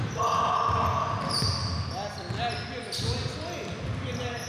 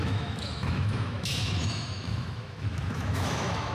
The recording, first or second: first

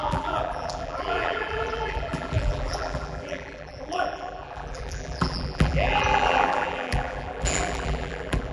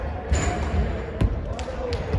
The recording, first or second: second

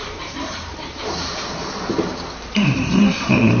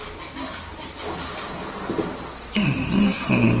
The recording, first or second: second